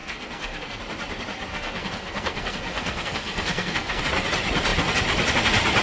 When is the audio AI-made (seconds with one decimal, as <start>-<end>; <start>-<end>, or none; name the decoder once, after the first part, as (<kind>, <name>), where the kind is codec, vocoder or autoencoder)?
0.0-0.8 (codec, SNAC); 1.5-4.0